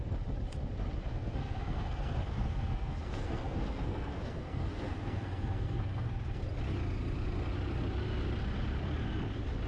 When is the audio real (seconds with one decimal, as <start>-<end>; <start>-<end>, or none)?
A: 0.0-1.1; 6.4-9.7